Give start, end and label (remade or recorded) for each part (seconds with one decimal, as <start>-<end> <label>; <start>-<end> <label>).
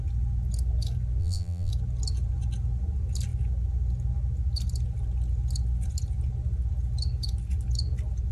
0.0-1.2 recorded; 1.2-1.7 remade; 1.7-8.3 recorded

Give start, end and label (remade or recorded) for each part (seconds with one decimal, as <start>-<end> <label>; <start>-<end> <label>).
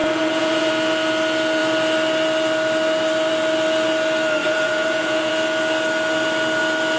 0.0-0.7 remade; 0.7-4.4 recorded; 4.4-5.3 remade; 5.3-7.0 recorded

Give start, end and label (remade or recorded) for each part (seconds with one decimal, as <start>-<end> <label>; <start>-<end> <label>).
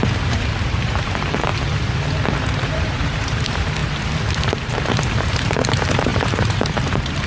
0.0-1.5 remade; 1.5-2.4 recorded; 2.4-3.8 remade; 3.8-4.5 recorded; 4.5-7.3 remade